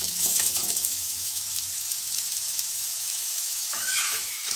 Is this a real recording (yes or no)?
no